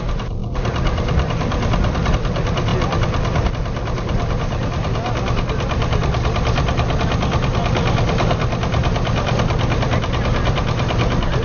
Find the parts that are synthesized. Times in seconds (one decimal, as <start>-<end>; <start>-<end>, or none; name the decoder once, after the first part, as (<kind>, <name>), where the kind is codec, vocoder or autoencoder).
0.4-2.1 (vocoder, BigVGAN v2); 2.7-3.5; 8.8-9.9